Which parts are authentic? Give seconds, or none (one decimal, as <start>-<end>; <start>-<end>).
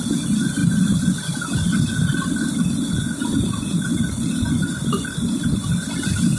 0.0-6.4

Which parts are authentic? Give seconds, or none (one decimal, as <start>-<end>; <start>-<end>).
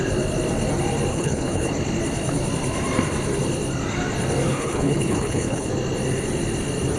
0.0-1.1; 1.7-4.5; 5.7-7.0